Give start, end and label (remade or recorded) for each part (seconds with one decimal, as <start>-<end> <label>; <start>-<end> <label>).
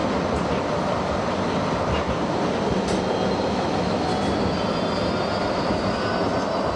0.0-3.5 recorded; 3.5-4.1 remade; 4.1-6.8 recorded